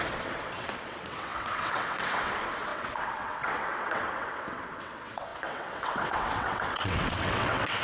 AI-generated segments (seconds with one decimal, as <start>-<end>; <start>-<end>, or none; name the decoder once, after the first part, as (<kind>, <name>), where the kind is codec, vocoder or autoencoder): 0.0-7.8 (vocoder, WaveNeXt)

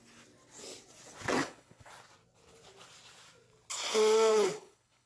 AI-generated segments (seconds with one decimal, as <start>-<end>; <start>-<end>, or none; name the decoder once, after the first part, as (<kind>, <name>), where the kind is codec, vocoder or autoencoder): 1.4-1.9 (codec, HILCodec); 4.3-5.1

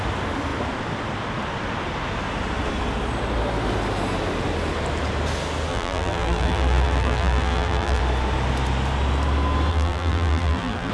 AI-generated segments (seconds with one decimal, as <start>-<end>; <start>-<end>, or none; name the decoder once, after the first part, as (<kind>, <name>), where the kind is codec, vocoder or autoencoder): 5.7-8.0 (vocoder, BigVGAN v2); 9.7-10.9

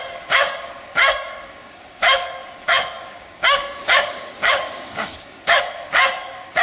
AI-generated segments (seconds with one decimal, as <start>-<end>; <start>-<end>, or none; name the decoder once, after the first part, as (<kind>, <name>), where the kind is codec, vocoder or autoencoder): 0.0-6.6 (codec, DAC)

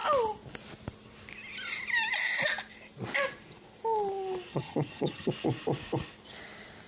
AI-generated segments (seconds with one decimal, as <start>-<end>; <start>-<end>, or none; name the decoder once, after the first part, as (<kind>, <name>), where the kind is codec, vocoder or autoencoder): 4.5-5.3 (vocoder, HiFi-GAN)

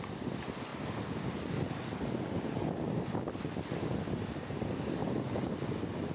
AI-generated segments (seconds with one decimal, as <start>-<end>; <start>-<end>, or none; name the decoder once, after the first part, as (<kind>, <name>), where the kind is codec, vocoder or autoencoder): none

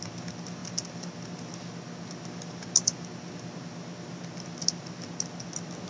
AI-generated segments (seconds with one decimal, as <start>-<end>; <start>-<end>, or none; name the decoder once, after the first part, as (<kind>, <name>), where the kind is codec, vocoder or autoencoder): none